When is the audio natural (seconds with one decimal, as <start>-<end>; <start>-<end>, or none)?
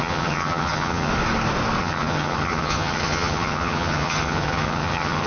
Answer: 1.1-1.8